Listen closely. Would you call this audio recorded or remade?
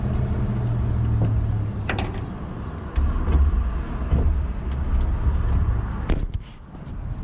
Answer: recorded